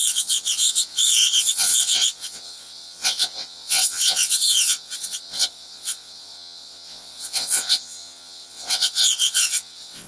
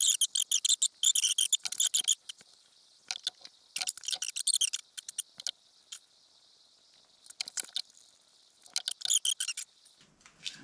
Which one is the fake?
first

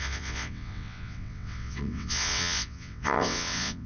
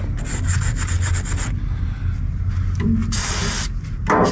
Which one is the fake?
first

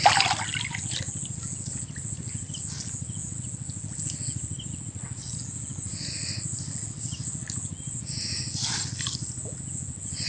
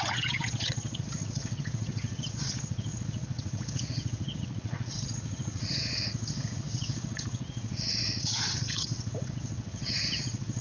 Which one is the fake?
second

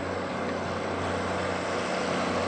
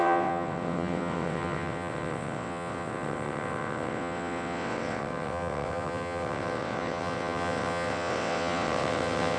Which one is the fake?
second